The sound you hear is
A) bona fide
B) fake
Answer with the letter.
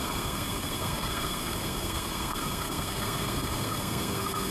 B